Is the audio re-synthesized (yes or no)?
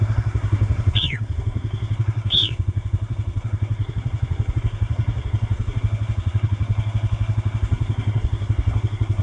yes